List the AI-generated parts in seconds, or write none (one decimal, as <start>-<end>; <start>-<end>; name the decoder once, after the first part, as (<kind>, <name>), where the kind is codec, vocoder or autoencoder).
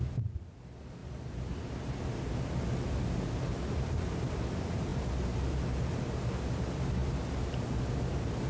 none